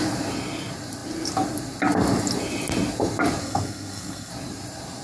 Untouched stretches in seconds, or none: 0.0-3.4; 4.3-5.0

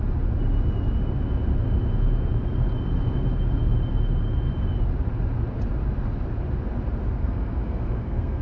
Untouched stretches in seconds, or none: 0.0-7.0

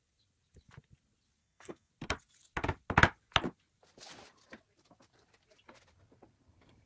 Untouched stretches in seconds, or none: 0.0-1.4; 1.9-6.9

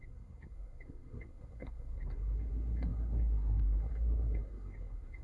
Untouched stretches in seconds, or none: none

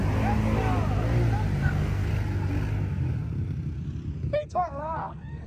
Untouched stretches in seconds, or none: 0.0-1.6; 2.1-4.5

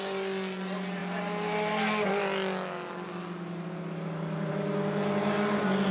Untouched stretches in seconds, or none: 0.0-5.9

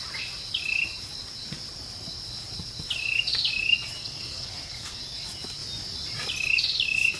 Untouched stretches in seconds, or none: 0.0-4.0; 5.0-7.2

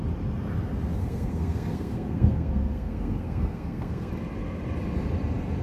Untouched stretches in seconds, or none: 0.0-1.0; 4.1-5.6